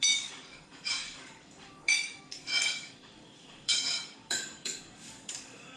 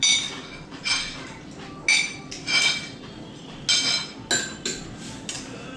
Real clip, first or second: second